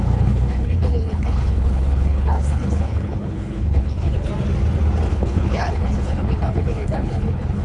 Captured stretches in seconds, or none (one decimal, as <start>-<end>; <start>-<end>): 4.3-5.1

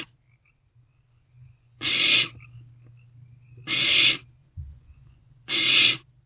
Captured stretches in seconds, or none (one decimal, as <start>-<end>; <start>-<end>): 0.0-1.1; 1.9-4.4; 5.6-6.3

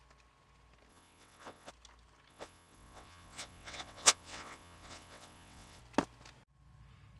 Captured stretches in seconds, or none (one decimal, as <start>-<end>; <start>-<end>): 0.0-0.9; 1.7-2.3; 5.8-7.2

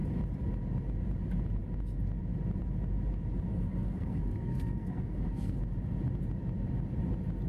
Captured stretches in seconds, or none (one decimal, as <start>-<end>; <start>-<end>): 0.0-3.5; 5.6-7.5